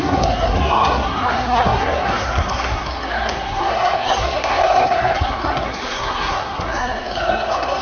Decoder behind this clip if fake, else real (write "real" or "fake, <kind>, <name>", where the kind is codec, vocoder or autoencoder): fake, codec, SNAC